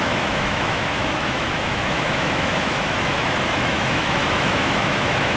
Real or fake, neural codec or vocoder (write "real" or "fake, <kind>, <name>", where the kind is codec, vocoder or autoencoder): fake, autoencoder, DAC-VAE